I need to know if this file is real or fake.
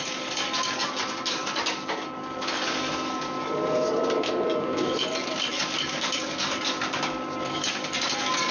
fake